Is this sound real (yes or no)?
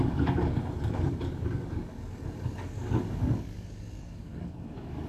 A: no